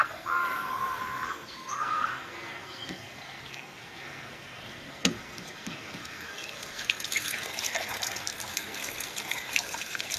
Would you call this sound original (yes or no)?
no